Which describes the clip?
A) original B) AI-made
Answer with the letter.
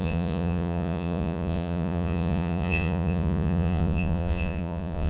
B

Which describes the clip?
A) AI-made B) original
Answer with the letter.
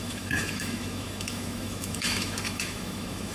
A